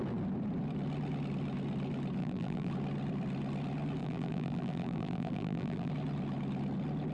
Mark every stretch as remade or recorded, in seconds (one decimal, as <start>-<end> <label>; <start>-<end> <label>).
0.0-2.2 recorded; 2.2-2.7 remade; 2.7-4.0 recorded; 4.0-5.9 remade; 5.9-7.1 recorded